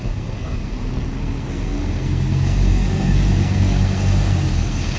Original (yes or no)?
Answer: no